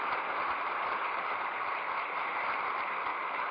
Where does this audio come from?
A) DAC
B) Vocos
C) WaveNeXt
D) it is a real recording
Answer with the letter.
D